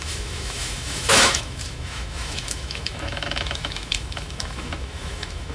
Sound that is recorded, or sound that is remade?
remade